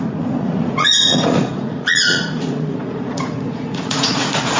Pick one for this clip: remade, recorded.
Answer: remade